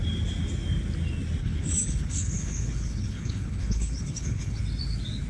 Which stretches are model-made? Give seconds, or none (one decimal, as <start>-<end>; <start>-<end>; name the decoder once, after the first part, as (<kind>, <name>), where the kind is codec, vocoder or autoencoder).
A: 1.4-4.6 (codec, HILCodec)